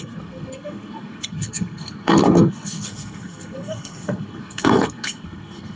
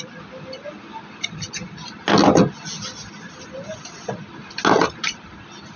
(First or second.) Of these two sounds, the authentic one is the second